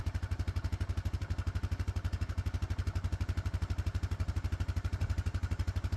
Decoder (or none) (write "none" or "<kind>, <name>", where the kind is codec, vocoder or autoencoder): none